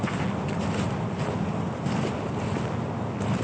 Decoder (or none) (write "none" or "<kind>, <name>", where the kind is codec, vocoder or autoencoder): none